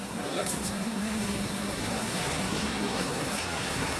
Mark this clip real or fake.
fake